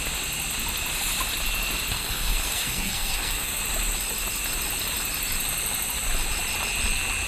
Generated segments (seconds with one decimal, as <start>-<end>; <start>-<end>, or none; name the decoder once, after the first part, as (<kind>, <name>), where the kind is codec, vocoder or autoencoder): 1.9-3.6 (codec, SNAC)